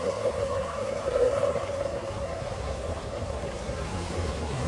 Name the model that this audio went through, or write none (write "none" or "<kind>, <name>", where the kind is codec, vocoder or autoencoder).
codec, SNAC